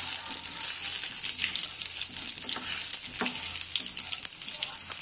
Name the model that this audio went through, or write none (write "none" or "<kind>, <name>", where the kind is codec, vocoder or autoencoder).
none